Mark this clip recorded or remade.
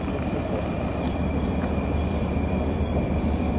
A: remade